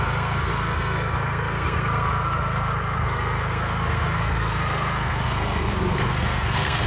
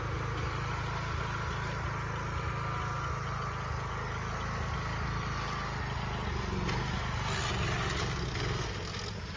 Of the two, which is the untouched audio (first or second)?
second